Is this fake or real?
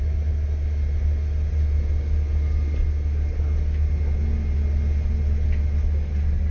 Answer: real